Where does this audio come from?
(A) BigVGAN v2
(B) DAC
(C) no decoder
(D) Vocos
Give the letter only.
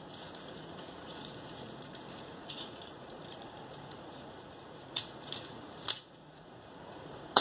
D